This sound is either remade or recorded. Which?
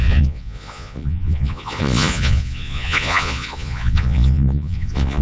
remade